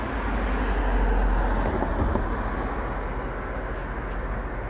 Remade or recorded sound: recorded